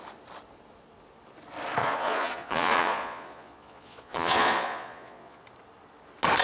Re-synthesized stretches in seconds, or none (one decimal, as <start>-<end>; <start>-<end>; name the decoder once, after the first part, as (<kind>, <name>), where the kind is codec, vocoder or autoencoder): 1.8-5.4 (vocoder, Vocos)